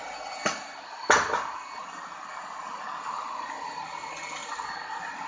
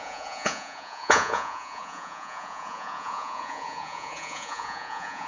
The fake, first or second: second